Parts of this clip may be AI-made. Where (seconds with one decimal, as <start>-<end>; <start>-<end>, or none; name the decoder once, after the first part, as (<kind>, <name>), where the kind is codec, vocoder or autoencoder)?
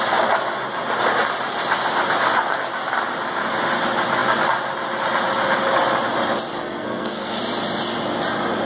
6.5-7.4 (codec, SNAC)